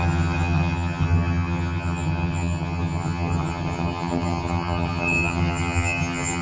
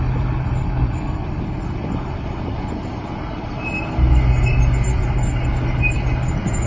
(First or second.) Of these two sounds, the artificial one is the first